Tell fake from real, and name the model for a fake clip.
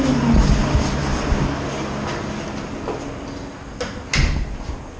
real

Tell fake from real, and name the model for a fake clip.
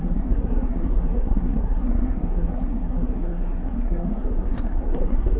fake, codec, SNAC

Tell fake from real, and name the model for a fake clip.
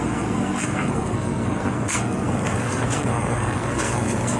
fake, codec, SNAC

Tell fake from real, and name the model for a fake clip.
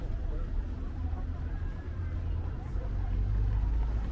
real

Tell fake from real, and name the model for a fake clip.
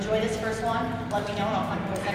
real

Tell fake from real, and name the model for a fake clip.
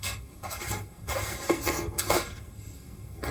fake, codec, SNAC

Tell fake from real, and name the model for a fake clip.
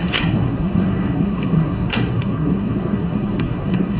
fake, codec, SNAC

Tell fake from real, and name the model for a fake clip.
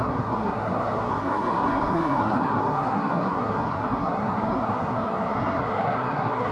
fake, codec, SNAC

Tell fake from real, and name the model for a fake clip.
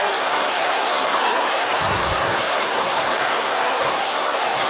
fake, codec, SNAC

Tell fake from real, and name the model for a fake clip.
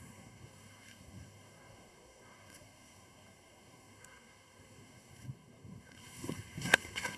fake, codec, SNAC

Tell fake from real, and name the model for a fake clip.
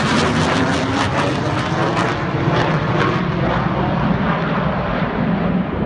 real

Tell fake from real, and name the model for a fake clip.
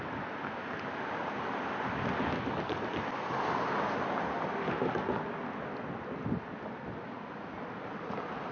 real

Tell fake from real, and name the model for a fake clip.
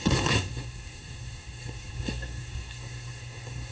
fake, codec, SNAC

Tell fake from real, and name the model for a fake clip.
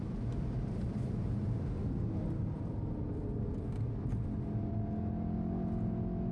real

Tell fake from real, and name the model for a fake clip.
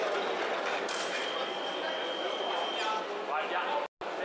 real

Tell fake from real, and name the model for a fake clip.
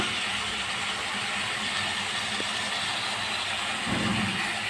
real